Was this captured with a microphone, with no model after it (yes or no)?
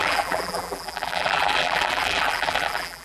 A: no